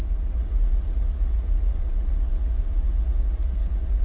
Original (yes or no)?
no